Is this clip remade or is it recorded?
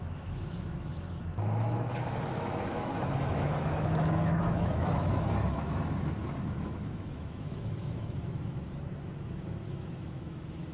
remade